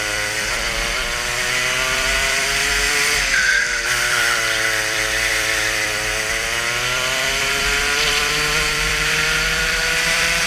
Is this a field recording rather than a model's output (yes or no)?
no